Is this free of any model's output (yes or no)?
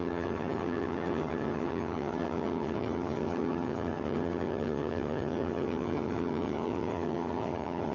no